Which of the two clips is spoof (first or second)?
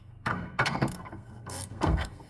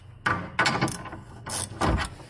first